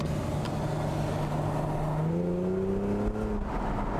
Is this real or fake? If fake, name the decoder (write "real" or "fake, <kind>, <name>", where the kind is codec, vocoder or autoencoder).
real